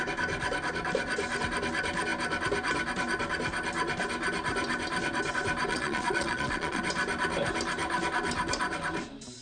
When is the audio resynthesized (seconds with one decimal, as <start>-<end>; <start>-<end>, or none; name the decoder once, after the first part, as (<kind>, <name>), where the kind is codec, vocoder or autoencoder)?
5.7-6.8 (vocoder, Vocos)